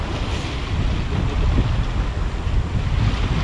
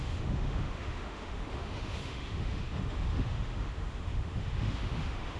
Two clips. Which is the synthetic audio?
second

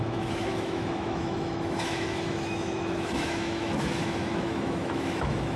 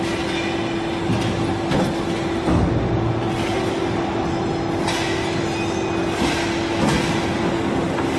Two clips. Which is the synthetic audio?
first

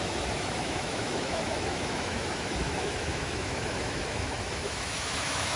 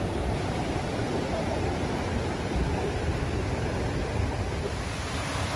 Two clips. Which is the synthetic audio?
first